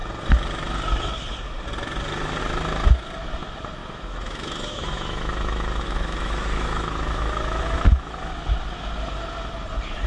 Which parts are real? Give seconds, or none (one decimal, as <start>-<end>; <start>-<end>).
0.0-3.8; 8.2-10.1